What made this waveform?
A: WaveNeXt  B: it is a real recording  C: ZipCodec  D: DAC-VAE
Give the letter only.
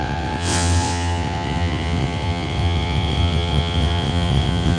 A